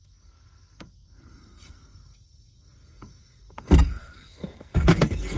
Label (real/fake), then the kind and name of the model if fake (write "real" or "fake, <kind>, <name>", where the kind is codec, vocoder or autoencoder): fake, codec, SNAC